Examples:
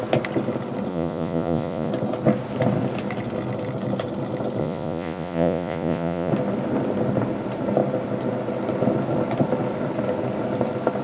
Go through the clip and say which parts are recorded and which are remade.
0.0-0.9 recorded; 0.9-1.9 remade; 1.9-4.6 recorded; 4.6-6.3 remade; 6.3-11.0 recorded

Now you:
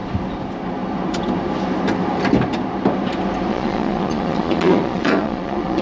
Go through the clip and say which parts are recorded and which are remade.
0.0-3.5 recorded; 3.5-5.8 remade